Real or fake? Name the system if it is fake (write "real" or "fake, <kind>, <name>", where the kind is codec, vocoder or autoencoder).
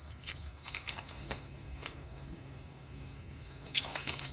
fake, codec, SNAC